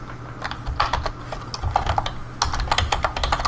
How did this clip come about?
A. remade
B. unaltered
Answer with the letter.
B